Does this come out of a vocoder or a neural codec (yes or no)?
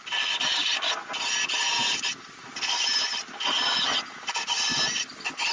no